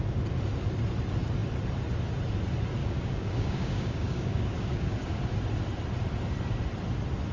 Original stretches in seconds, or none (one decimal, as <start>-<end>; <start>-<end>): 0.0-2.8; 5.2-7.3